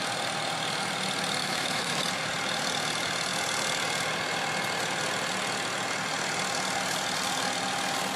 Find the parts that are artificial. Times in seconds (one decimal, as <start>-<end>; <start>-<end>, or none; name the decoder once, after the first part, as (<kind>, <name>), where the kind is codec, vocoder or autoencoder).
1.4-2.0 (autoencoder, DAC-VAE)